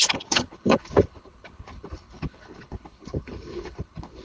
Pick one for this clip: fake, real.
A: fake